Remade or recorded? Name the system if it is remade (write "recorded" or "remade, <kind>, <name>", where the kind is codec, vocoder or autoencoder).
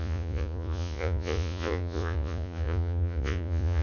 remade, vocoder, Vocos